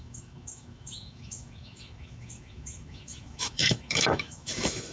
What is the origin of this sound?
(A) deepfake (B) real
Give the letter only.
A